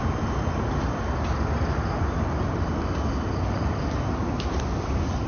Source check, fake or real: real